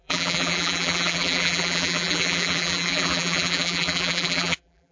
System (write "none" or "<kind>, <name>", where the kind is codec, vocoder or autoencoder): vocoder, BigVGAN v2